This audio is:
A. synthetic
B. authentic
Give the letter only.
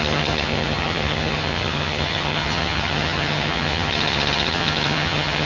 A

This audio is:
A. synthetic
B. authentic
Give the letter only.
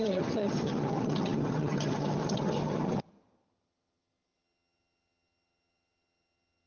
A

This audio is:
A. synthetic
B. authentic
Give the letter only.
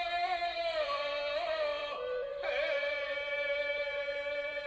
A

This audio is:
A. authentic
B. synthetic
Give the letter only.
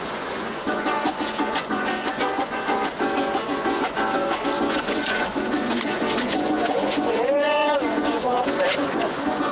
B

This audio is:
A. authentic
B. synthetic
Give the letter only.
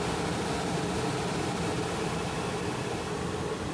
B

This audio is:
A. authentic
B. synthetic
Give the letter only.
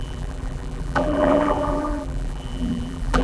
B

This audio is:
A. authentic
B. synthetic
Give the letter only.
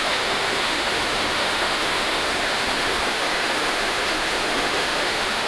B